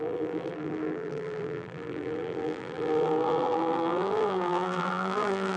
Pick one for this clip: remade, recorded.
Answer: remade